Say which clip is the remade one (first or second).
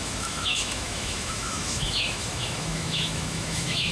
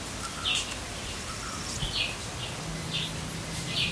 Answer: first